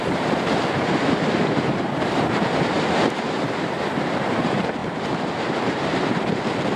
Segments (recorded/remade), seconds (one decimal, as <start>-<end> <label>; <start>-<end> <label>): 0.0-6.8 remade